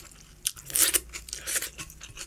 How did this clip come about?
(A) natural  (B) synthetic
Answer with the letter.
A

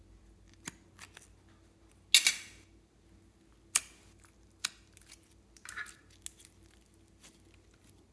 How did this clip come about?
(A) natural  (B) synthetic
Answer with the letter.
A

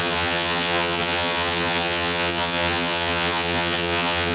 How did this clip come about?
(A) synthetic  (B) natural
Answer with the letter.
A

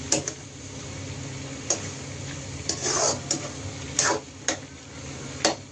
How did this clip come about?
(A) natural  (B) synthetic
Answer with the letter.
B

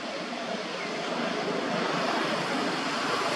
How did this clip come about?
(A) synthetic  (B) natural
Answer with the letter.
B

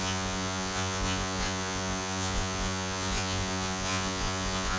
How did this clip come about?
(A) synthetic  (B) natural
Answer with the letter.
A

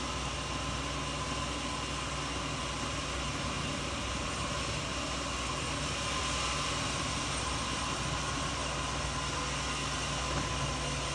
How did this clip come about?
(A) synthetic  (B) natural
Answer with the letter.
B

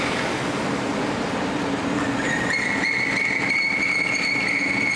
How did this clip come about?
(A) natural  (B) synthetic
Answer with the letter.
A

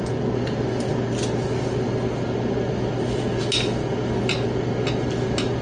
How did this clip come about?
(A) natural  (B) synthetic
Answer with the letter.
A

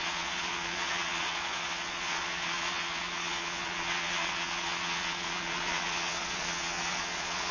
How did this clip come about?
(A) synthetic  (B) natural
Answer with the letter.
A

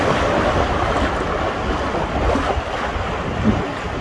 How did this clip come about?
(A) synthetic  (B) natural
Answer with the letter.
B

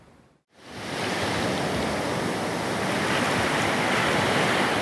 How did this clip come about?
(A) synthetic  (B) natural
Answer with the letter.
B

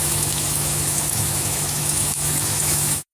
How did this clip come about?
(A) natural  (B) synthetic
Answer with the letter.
B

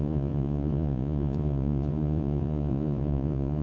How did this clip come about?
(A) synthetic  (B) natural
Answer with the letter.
A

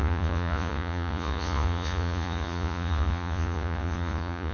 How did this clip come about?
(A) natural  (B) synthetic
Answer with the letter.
B